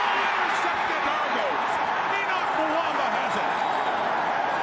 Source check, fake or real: real